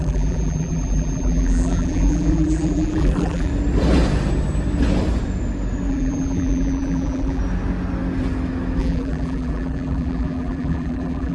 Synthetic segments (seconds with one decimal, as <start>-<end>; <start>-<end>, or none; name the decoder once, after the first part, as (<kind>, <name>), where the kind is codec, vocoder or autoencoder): 0.0-3.5 (vocoder, BigVGAN v2); 5.9-7.4; 8.8-11.3